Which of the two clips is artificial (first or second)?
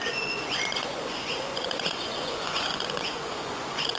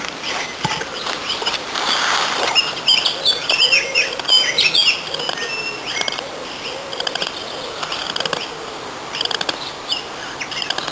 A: first